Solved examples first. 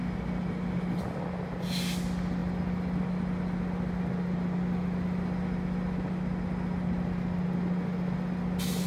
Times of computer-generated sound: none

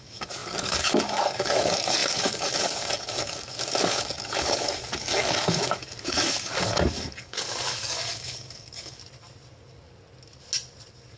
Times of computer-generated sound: 0.0-9.0 (codec, DAC)